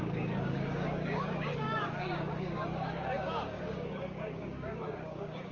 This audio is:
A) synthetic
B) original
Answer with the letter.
A